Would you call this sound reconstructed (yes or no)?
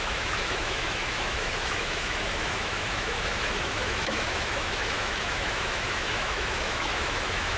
yes